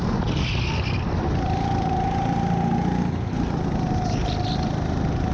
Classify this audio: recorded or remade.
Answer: recorded